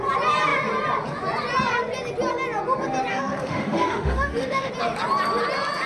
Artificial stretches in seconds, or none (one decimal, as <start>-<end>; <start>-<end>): 3.1-4.7